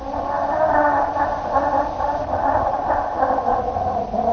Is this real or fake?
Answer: real